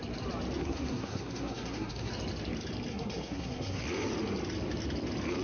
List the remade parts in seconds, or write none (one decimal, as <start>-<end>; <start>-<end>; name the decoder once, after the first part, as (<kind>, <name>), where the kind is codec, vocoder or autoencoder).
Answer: 0.6-2.1 (codec, SNAC); 2.9-3.8